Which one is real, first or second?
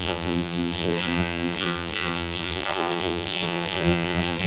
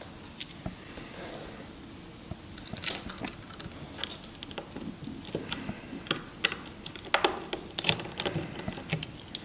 second